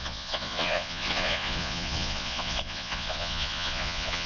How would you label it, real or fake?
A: fake